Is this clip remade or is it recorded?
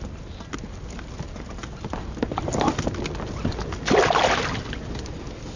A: recorded